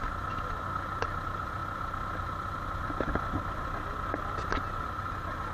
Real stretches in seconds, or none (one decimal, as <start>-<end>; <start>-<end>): 0.0-5.5